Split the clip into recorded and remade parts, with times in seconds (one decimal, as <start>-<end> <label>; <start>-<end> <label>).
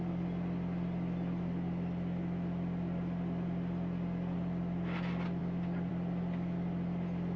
0.0-7.4 recorded